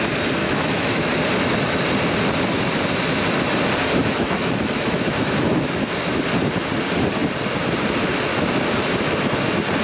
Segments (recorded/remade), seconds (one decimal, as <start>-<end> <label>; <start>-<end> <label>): 0.0-0.4 recorded; 0.4-1.1 remade; 1.1-4.0 recorded; 4.0-5.8 remade; 5.8-9.8 recorded